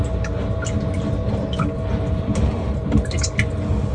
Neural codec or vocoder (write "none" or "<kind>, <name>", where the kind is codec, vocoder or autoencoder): none